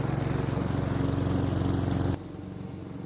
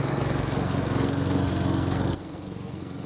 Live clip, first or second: first